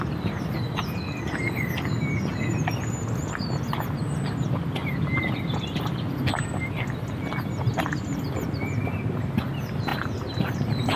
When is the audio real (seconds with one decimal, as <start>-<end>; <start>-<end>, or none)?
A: 0.0-11.0